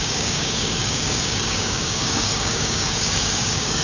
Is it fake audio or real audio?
fake